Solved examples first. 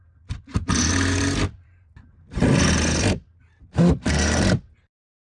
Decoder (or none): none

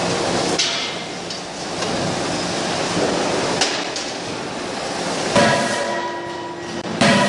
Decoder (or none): none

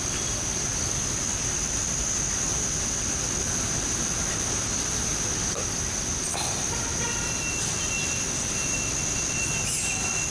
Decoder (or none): none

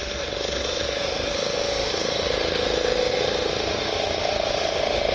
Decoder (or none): autoencoder, DAC-VAE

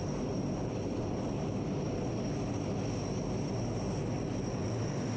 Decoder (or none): none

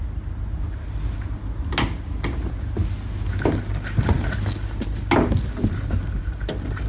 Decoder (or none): none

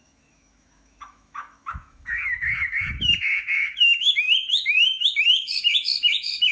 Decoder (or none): autoencoder, DAC-VAE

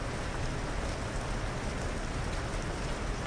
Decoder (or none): none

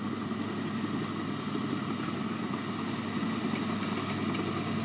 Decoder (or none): none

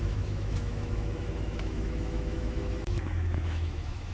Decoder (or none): autoencoder, DAC-VAE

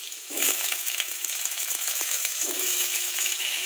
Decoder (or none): autoencoder, DAC-VAE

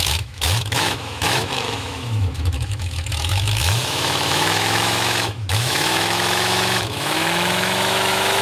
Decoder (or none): autoencoder, DAC-VAE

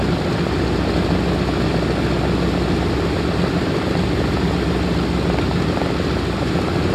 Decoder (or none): none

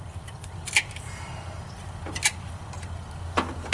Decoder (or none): none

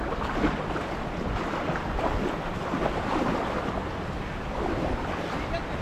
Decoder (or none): none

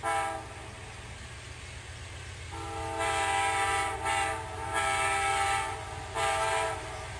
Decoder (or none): none